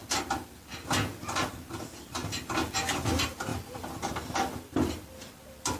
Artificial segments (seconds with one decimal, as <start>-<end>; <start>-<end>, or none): 0.0-5.8